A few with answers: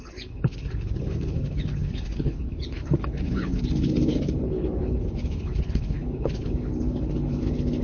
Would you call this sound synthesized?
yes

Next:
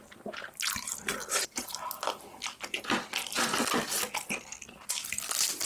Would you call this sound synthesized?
no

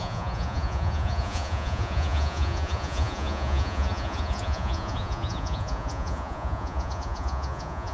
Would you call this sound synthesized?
yes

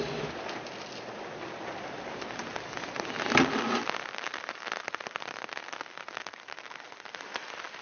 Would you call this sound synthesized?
no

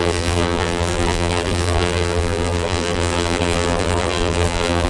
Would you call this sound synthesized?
yes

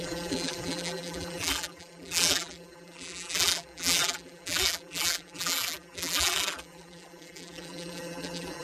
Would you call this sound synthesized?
yes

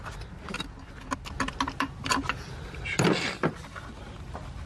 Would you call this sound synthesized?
no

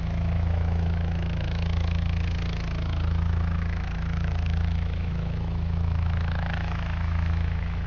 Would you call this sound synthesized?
yes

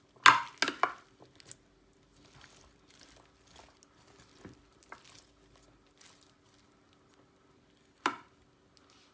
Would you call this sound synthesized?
no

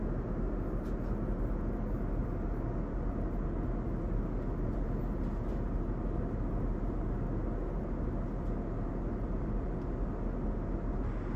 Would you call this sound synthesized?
no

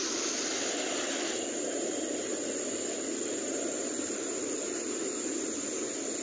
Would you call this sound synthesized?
no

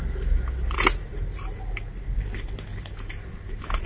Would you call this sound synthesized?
no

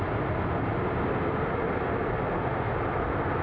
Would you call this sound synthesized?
no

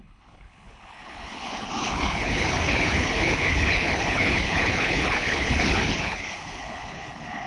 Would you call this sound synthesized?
yes